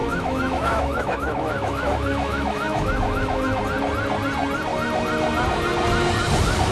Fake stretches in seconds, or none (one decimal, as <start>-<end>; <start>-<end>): 0.0-3.6